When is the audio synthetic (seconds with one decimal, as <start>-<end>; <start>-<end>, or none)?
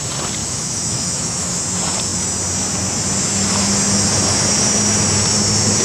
0.4-1.6